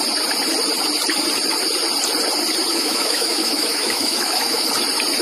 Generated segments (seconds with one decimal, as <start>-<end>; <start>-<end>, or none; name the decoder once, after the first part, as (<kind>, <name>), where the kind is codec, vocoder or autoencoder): 2.7-4.7 (autoencoder, DAC-VAE)